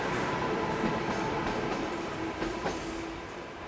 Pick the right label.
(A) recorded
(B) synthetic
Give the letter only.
B